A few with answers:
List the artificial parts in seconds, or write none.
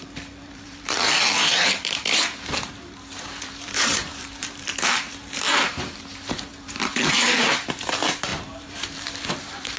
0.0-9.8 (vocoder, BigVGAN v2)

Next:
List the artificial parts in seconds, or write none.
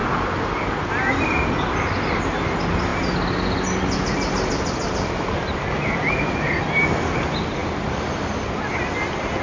none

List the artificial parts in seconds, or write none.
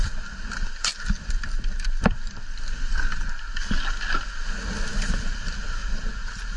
0.0-0.9 (vocoder, BigVGAN v2); 4.9-6.6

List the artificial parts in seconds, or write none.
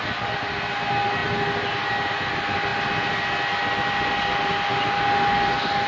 1.2-1.9 (vocoder, BigVGAN v2)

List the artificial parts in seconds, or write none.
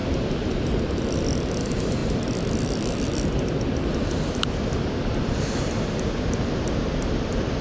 0.0-0.8 (vocoder, BigVGAN v2); 2.0-4.1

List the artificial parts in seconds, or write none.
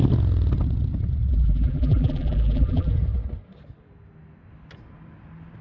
1.3-2.9 (vocoder, BigVGAN v2)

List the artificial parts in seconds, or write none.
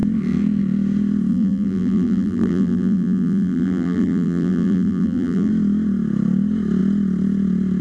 1.3-5.5 (vocoder, BigVGAN v2)